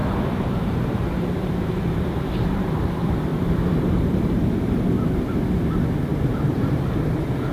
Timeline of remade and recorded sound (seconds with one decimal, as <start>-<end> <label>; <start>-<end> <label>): 0.0-2.9 remade; 2.9-3.3 recorded; 3.3-4.5 remade; 4.5-6.1 recorded; 6.1-7.5 remade